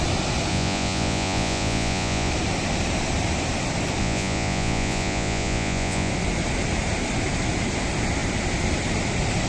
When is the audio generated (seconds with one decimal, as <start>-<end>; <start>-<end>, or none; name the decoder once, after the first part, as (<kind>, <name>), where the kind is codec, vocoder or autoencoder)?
0.5-2.3 (vocoder, Vocos); 4.0-6.1